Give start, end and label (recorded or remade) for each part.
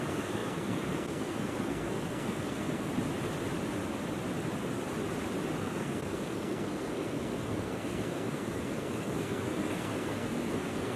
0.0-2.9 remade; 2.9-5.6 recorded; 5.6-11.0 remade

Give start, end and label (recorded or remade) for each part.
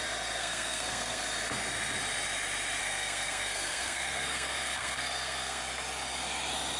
0.0-0.4 recorded; 0.4-1.2 remade; 1.2-2.8 recorded; 2.8-5.6 remade; 5.6-6.8 recorded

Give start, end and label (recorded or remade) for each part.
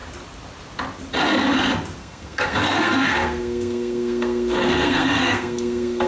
0.0-2.0 recorded; 2.0-6.1 remade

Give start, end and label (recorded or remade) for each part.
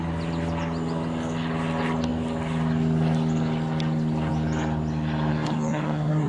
0.0-5.3 recorded; 5.3-6.3 remade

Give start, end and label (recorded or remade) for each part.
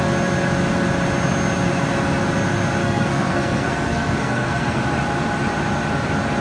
0.0-2.8 recorded; 2.8-4.8 remade; 4.8-6.4 recorded